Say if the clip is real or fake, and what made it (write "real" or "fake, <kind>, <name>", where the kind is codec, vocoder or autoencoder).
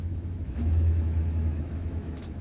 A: fake, autoencoder, DAC-VAE